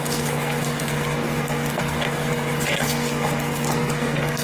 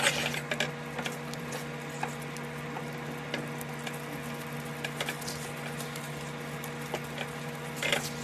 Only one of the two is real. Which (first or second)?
second